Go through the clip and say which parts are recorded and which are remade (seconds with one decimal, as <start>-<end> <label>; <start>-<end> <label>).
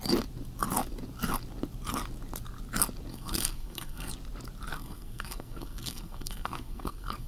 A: 0.0-3.1 recorded; 3.1-4.1 remade; 4.1-4.7 recorded; 4.7-7.3 remade